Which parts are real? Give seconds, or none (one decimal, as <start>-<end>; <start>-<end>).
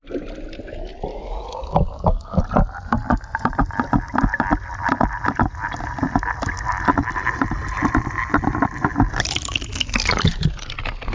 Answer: 0.0-1.1; 2.4-11.1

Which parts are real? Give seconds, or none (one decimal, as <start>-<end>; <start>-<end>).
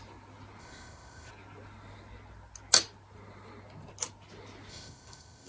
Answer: 0.0-0.6; 1.3-4.7